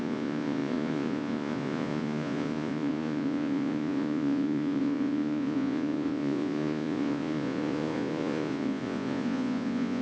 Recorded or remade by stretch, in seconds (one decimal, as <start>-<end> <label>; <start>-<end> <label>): 0.0-10.0 remade